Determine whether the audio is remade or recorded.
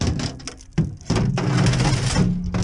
recorded